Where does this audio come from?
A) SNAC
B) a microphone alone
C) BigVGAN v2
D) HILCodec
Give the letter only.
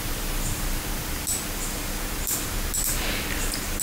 B